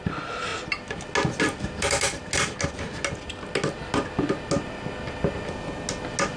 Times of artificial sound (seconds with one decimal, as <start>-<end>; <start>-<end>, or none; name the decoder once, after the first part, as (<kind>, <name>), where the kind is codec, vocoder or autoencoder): none